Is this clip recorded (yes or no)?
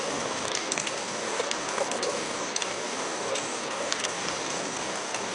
no